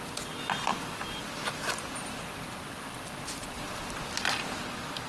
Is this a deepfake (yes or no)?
no